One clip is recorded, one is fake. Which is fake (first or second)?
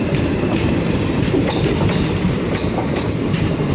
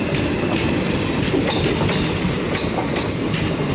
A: first